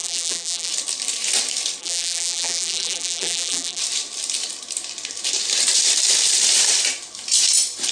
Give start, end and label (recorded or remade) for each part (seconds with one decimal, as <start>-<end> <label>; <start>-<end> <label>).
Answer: 0.0-0.7 remade; 0.7-1.8 recorded; 1.8-3.8 remade; 3.8-7.9 recorded